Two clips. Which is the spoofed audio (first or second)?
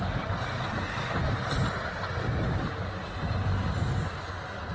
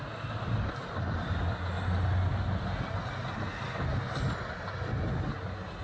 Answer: first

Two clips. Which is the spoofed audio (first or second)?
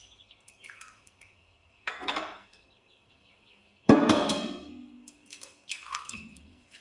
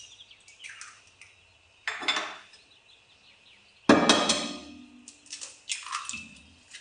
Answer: first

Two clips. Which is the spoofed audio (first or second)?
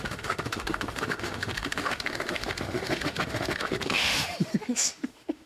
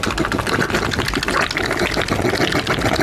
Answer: first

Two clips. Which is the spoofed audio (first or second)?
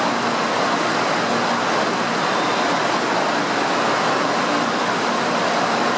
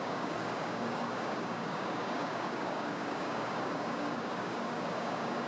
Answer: second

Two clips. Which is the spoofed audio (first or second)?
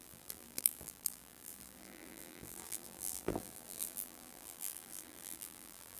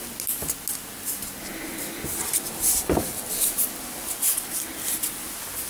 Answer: first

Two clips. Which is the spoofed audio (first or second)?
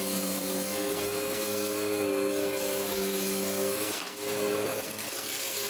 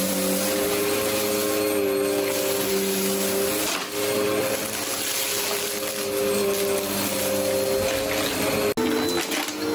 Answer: first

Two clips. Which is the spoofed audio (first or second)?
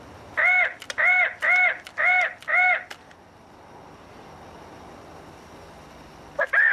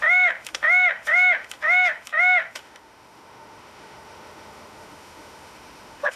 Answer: second